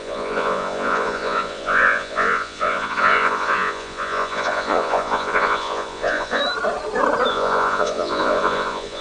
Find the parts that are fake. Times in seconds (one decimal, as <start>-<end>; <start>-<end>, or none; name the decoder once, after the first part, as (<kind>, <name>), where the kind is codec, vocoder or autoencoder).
0.0-6.4 (vocoder, Vocos); 7.3-9.0